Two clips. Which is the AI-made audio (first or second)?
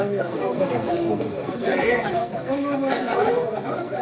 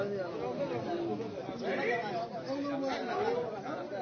first